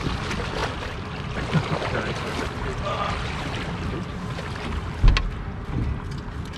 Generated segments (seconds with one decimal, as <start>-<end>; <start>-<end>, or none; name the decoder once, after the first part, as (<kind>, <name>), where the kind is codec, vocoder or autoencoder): none